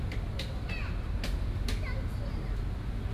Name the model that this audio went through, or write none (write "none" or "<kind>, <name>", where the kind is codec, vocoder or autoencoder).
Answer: none